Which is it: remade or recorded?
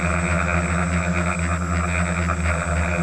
recorded